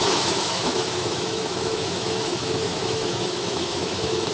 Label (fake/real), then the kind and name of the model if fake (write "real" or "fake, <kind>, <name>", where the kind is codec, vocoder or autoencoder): fake, autoencoder, DAC-VAE